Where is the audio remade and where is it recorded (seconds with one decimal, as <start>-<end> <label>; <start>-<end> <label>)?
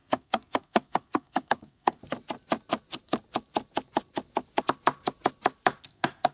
0.0-2.0 remade; 2.0-5.8 recorded; 5.8-6.3 remade